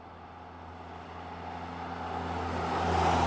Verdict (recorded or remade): recorded